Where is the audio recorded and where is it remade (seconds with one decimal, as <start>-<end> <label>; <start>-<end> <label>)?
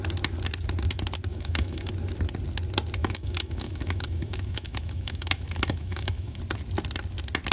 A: 0.0-1.3 recorded; 1.3-1.9 remade; 1.9-3.0 recorded; 3.0-6.4 remade; 6.4-7.5 recorded